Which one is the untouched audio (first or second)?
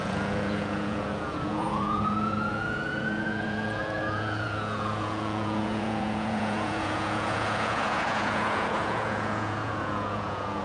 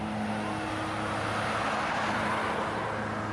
second